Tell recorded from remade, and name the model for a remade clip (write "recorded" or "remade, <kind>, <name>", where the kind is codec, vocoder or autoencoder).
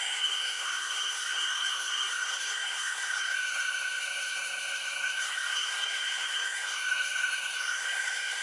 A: remade, codec, SNAC